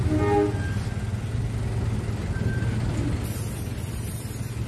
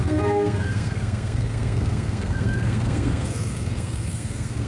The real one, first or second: first